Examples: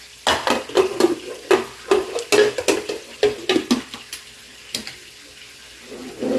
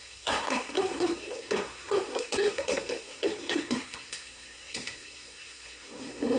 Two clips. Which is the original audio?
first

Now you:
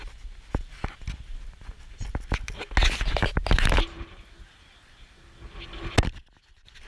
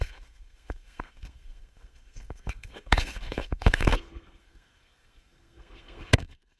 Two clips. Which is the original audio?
first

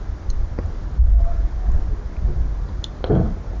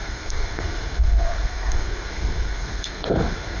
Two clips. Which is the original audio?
first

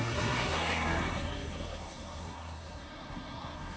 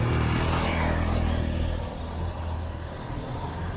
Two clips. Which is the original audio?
second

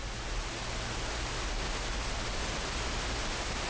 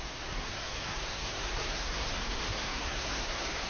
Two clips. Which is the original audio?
first